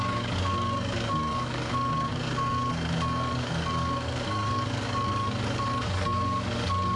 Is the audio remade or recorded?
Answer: remade